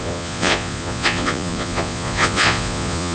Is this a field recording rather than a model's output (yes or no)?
no